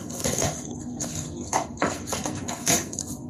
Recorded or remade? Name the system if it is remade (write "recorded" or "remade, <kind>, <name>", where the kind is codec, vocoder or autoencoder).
remade, codec, SNAC